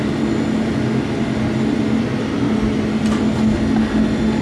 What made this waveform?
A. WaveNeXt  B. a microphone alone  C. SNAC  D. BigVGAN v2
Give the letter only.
B